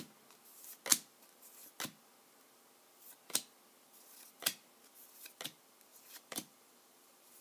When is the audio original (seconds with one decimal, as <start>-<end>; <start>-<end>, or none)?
0.0-5.9